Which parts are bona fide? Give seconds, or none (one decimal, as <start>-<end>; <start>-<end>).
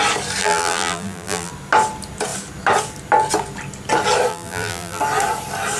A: 0.0-0.4; 1.5-4.3; 5.0-5.8